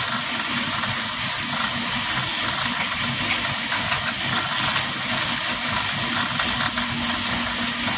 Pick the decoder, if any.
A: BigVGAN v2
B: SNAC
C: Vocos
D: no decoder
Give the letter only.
D